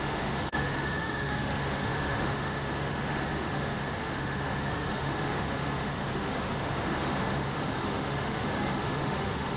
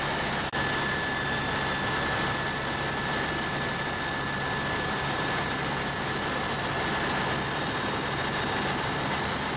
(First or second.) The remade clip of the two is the first